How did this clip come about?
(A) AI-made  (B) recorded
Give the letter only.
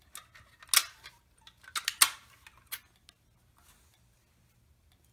B